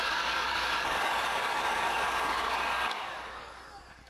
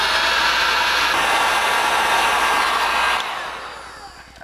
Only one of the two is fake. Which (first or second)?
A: first